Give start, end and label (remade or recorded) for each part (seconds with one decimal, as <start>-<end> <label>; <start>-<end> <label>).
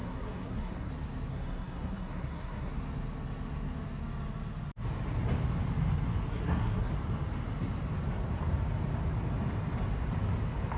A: 0.0-0.9 remade; 0.9-1.3 recorded; 1.3-2.7 remade; 2.7-6.3 recorded; 6.3-6.9 remade; 6.9-10.8 recorded